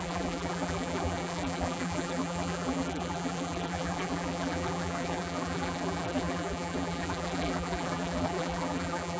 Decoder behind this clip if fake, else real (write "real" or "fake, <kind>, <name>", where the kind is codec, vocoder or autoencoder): fake, vocoder, BigVGAN v2